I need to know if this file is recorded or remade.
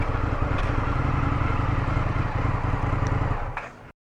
recorded